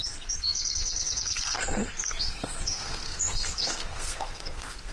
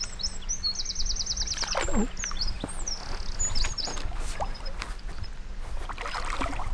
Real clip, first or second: second